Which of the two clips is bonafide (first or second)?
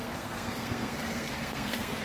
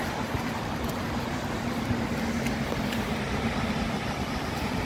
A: second